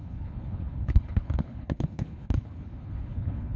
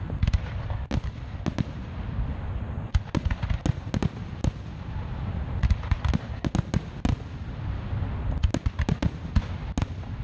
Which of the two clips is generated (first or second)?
first